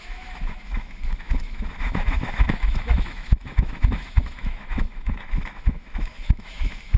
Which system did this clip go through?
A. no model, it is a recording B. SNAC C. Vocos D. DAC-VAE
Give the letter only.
D